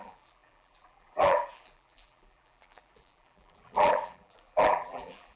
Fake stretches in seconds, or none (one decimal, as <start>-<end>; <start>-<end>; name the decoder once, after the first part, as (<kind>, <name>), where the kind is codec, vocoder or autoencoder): 0.0-5.4 (vocoder, BigVGAN v2)